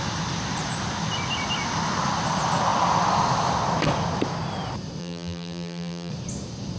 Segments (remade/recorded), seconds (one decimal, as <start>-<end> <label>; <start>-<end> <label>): 0.0-5.0 recorded; 5.0-6.1 remade; 6.1-6.8 recorded